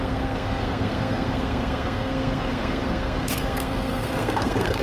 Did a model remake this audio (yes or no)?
yes